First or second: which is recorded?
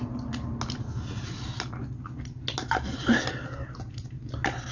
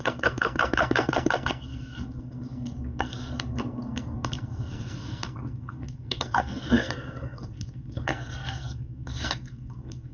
first